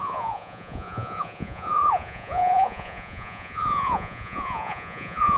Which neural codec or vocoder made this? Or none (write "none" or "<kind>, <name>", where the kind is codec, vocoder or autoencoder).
vocoder, Vocos